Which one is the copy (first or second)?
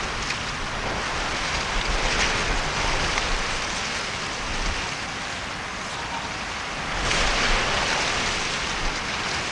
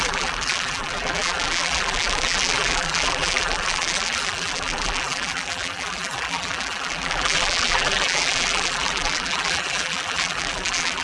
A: second